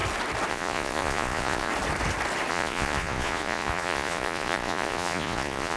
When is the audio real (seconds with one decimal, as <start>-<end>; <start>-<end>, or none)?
0.0-0.5; 1.7-2.5